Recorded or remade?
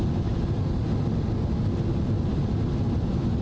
recorded